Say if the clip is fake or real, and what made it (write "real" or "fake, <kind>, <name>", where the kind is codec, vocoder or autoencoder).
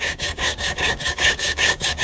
fake, codec, DAC